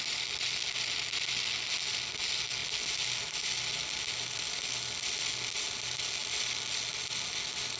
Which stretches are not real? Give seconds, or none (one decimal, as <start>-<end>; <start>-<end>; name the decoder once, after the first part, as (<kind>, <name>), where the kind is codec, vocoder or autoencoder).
none